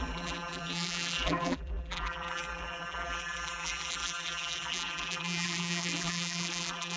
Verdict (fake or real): fake